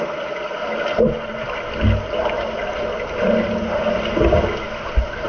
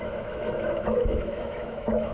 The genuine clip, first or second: first